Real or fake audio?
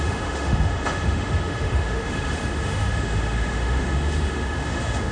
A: fake